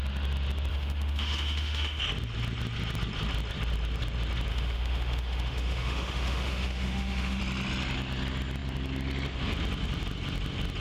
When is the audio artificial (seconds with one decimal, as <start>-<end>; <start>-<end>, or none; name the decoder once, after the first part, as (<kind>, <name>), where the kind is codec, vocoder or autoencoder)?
0.7-2.0 (autoencoder, DAC-VAE); 4.5-7.4